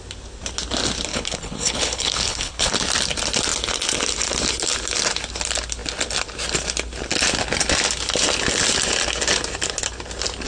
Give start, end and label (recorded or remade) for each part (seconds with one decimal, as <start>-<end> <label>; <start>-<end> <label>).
0.0-1.1 recorded; 1.1-2.7 remade; 2.7-10.5 recorded